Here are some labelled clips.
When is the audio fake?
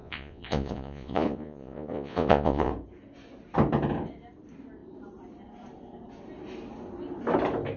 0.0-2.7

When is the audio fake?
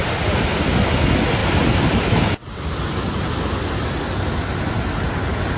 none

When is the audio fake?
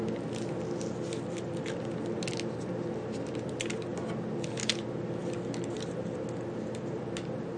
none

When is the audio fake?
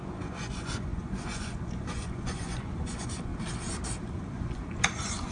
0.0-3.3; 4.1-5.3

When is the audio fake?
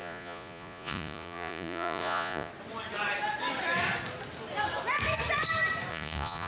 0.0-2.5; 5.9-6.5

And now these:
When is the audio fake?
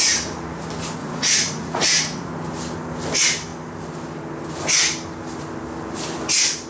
1.0-2.3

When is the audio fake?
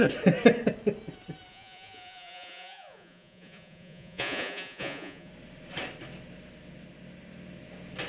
1.5-5.3